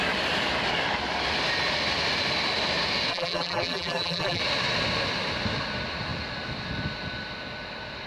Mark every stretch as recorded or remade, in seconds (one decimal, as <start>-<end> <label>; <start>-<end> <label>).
0.0-3.1 recorded; 3.1-4.4 remade; 4.4-8.1 recorded